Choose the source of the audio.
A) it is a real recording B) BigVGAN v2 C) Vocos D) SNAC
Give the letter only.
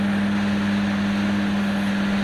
A